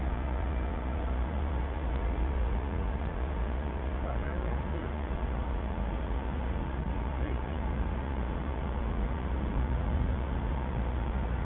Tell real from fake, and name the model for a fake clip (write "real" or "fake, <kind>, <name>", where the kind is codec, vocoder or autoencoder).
fake, vocoder, Vocos